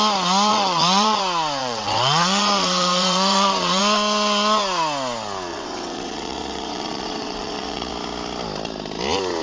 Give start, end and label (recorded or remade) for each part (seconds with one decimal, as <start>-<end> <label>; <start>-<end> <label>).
0.0-0.5 recorded; 0.5-1.2 remade; 1.2-1.6 recorded; 1.6-3.8 remade; 3.8-5.5 recorded; 5.5-7.9 remade; 7.9-9.4 recorded